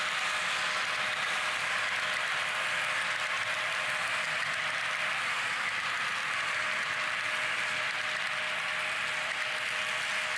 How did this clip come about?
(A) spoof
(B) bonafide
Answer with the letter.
B